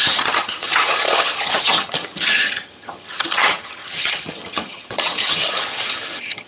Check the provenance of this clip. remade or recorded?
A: remade